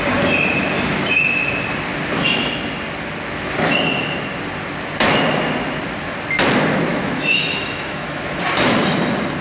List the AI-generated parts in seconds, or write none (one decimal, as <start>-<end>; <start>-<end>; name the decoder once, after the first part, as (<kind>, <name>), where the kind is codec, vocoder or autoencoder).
6.9-8.4 (autoencoder, DAC-VAE)